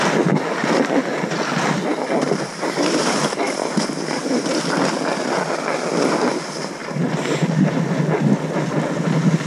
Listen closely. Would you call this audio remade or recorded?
recorded